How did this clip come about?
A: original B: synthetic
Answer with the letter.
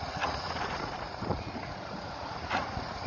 B